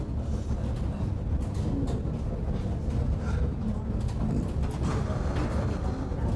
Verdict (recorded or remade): recorded